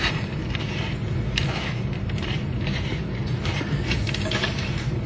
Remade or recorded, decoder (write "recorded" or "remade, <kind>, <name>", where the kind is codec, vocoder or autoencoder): remade, vocoder, BigVGAN v2